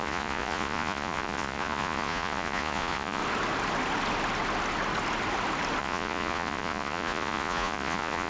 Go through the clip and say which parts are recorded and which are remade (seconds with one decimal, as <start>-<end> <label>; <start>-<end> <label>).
0.0-3.2 remade; 3.2-5.8 recorded; 5.8-8.3 remade